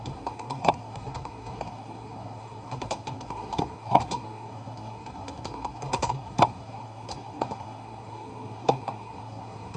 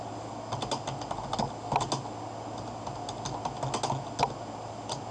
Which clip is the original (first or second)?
second